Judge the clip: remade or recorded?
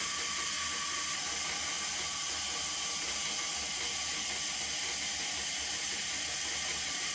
recorded